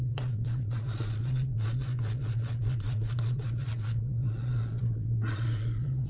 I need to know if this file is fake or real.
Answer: fake